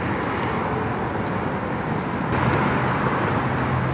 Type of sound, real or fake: real